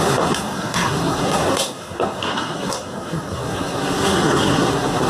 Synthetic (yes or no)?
yes